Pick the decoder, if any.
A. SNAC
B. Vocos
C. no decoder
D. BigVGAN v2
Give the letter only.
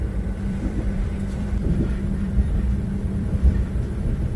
D